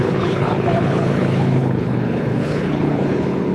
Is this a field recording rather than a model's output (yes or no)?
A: no